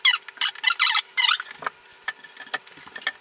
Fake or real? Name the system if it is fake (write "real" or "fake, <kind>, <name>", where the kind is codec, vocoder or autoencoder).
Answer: fake, vocoder, BigVGAN v2